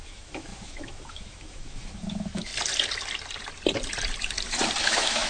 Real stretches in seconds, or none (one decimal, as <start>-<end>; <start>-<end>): 2.5-4.8